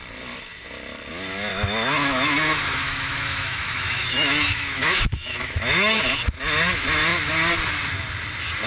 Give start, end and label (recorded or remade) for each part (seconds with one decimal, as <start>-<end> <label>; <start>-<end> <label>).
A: 0.0-1.5 recorded; 1.5-6.0 remade; 6.0-8.7 recorded